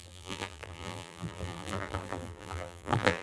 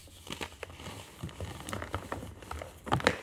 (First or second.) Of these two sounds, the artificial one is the first